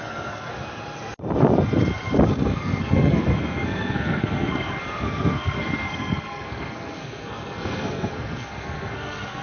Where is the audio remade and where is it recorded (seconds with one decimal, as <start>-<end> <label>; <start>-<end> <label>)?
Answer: 0.0-0.5 remade; 0.5-2.3 recorded; 2.3-9.4 remade